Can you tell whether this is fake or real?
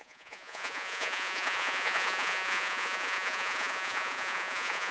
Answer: fake